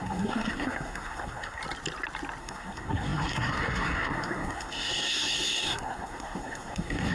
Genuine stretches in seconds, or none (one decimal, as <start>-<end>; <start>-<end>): 1.6-2.4